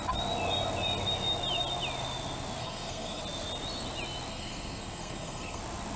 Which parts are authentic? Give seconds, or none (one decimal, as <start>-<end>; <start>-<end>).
0.0-2.6; 3.2-4.3; 5.6-6.0